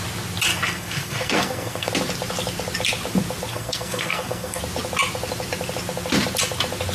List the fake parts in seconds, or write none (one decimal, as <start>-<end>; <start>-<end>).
0.5-1.9; 3.5-4.6